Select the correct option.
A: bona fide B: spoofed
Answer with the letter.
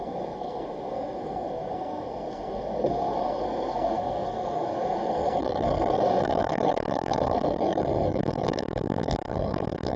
B